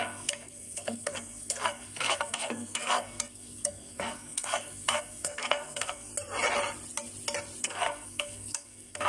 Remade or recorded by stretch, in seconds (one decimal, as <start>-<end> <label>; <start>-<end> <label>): 0.0-6.1 remade; 6.1-7.6 recorded; 7.6-9.1 remade